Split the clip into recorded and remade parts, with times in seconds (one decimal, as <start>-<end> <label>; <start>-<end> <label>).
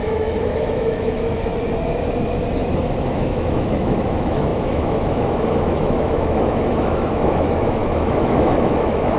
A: 0.0-1.5 remade; 1.5-2.8 recorded; 2.8-9.2 remade